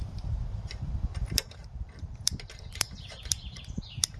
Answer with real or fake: fake